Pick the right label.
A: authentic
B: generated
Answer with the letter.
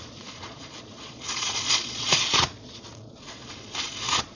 B